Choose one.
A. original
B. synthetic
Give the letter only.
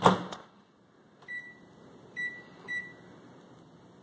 A